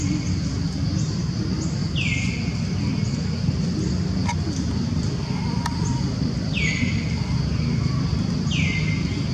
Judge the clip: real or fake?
real